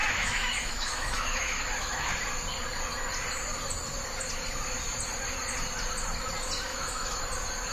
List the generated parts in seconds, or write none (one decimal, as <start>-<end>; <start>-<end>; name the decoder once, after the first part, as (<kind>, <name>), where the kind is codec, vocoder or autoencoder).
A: 0.0-2.1 (autoencoder, DAC-VAE); 6.7-7.2